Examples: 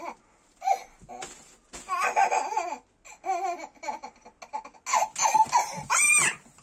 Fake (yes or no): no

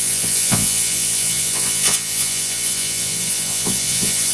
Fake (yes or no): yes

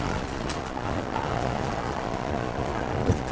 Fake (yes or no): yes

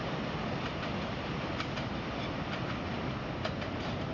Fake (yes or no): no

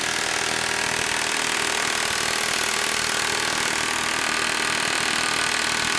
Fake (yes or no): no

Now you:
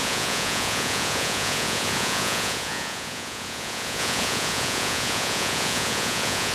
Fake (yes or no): yes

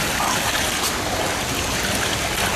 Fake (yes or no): no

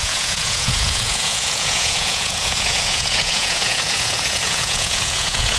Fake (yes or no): yes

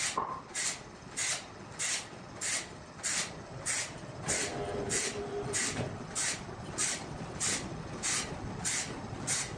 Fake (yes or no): no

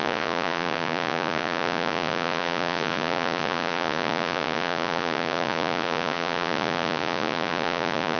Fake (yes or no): yes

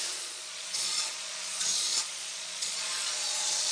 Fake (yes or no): yes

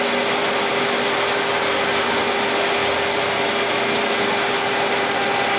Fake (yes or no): no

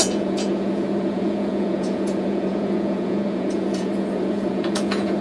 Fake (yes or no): yes